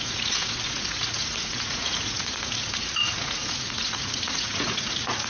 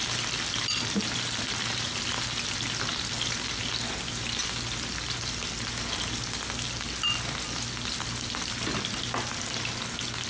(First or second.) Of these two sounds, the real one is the second